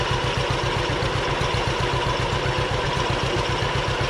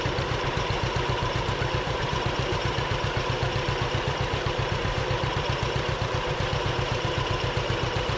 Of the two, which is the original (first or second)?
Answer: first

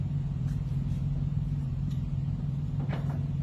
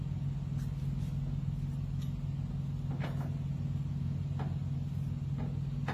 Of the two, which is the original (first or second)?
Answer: second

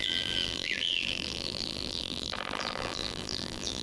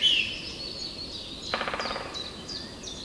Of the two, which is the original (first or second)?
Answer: second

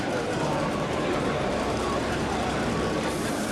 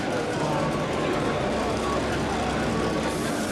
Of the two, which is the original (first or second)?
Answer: second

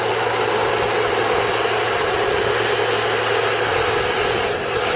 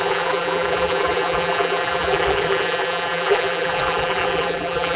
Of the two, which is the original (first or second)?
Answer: first